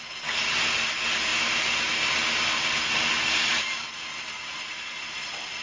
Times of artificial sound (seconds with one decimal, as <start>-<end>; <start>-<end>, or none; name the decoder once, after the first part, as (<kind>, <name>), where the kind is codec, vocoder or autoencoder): none